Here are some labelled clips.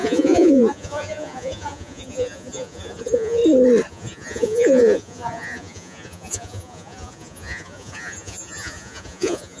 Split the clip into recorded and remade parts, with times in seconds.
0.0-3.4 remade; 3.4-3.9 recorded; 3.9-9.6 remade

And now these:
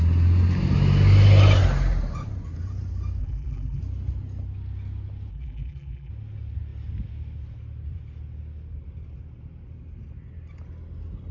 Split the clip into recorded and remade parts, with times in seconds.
0.0-3.2 recorded; 3.2-3.8 remade; 3.8-5.3 recorded; 5.3-6.1 remade; 6.1-11.3 recorded

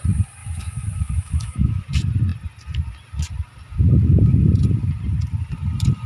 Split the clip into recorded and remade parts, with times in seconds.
0.0-0.4 recorded; 0.4-1.8 remade; 1.8-6.1 recorded

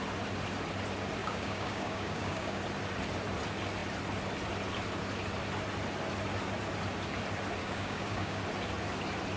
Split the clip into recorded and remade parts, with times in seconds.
0.0-1.2 recorded; 1.2-2.6 remade; 2.6-7.6 recorded; 7.6-8.4 remade; 8.4-9.4 recorded